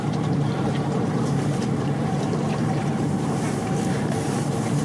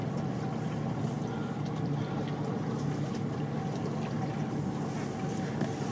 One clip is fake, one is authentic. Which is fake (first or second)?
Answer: first